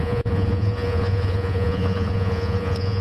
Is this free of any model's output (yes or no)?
no